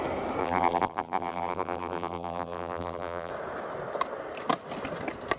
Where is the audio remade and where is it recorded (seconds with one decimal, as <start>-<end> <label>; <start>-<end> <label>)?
0.0-0.4 recorded; 0.4-3.3 remade; 3.3-5.4 recorded